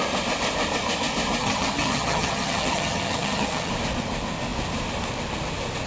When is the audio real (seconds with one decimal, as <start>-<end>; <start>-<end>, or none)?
0.0-1.4; 3.7-5.9